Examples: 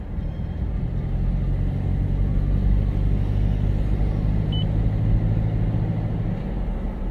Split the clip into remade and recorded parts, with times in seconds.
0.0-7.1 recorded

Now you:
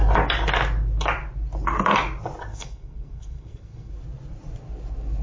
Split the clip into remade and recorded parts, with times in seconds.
0.0-2.5 recorded; 2.5-3.9 remade; 3.9-5.2 recorded

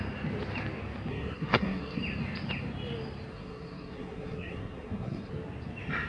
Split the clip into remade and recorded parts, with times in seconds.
0.0-1.1 recorded; 1.1-2.0 remade; 2.0-3.3 recorded; 3.3-5.3 remade; 5.3-6.1 recorded

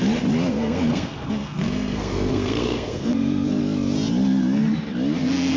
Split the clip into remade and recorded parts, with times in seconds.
0.0-0.5 recorded; 0.5-3.6 remade; 3.6-5.6 recorded

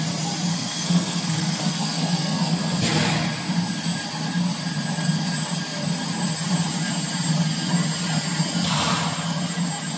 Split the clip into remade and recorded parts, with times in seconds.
0.0-0.5 recorded; 0.5-2.8 remade; 2.8-10.0 recorded

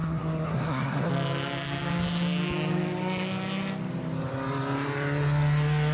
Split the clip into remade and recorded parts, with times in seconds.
0.0-1.1 remade; 1.1-5.9 recorded

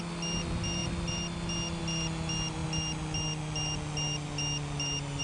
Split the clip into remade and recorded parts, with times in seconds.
0.0-5.2 recorded

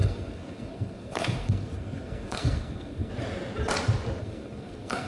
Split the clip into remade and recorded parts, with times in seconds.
0.0-3.1 remade; 3.1-4.2 recorded; 4.2-5.1 remade